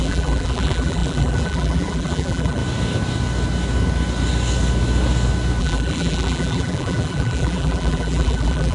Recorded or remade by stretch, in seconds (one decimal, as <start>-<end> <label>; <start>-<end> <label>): 0.0-2.6 remade; 2.6-5.6 recorded; 5.6-8.7 remade